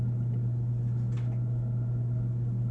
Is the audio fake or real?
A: real